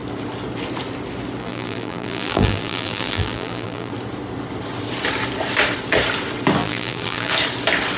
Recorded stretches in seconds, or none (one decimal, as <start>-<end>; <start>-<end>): 0.0-1.4; 3.9-6.6; 7.3-8.0

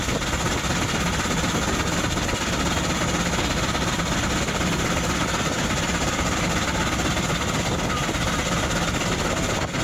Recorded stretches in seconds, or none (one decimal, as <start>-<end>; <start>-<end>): 0.0-9.8

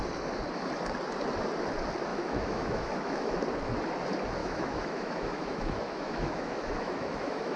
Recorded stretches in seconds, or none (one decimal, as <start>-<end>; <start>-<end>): 0.0-2.1; 3.4-4.4